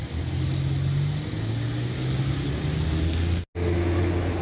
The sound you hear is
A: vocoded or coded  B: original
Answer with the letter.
B